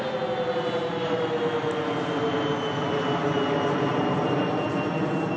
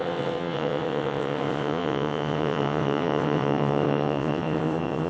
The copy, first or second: second